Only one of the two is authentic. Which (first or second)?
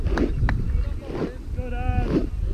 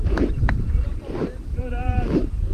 first